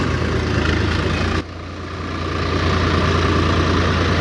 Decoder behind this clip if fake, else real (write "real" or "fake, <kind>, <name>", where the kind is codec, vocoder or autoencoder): real